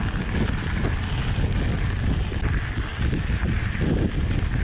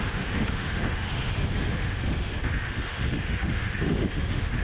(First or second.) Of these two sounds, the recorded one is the first